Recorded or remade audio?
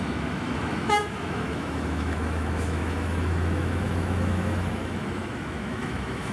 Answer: remade